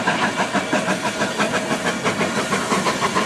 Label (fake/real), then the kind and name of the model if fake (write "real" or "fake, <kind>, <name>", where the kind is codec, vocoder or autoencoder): real